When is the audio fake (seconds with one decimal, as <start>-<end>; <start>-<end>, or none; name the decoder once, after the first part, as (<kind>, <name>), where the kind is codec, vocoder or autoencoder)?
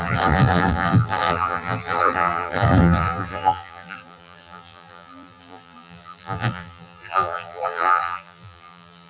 0.0-9.1 (vocoder, BigVGAN v2)